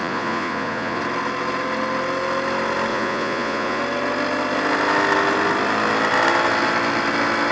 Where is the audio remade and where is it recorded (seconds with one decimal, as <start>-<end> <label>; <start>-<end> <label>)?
0.0-1.0 remade; 1.0-2.9 recorded; 2.9-3.8 remade; 3.8-7.5 recorded